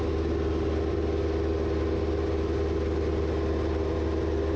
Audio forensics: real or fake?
real